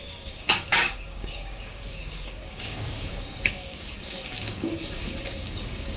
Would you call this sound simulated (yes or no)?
yes